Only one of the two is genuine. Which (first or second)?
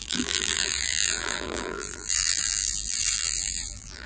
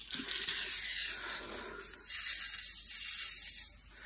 second